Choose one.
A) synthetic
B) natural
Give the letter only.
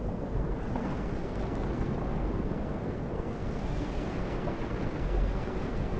A